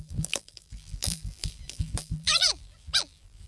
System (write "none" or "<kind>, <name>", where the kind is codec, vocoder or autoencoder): vocoder, BigVGAN v2